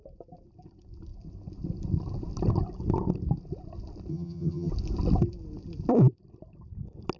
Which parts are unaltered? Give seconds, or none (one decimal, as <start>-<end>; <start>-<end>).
0.0-4.1; 4.7-7.2